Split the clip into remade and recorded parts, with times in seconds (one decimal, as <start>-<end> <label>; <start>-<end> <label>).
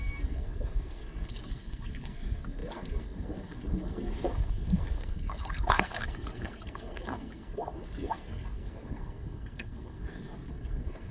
0.0-11.1 remade